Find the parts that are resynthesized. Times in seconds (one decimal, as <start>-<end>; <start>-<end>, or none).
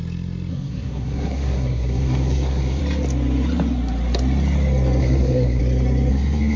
0.5-2.8; 5.0-5.6; 6.1-6.6